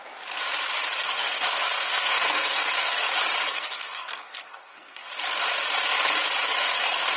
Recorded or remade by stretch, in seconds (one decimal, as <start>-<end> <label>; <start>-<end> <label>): 0.0-1.0 recorded; 1.0-3.1 remade; 3.1-3.5 recorded; 3.5-5.1 remade; 5.1-6.4 recorded; 6.4-7.2 remade